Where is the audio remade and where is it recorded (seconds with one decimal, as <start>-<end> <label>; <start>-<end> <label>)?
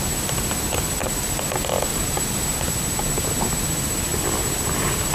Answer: 0.0-1.9 recorded; 1.9-2.7 remade; 2.7-5.1 recorded